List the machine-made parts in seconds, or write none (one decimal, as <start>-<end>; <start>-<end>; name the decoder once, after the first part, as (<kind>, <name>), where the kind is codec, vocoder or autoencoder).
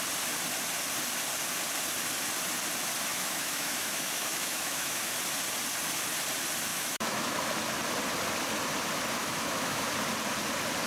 3.1-5.1 (autoencoder, DAC-VAE); 6.7-7.4; 9.2-9.9